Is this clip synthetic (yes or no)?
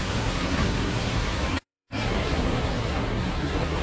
yes